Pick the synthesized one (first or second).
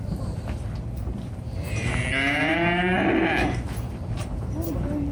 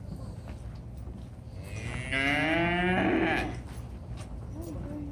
first